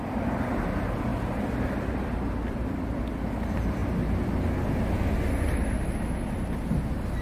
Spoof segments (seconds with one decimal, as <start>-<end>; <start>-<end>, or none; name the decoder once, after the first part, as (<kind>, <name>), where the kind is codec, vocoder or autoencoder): none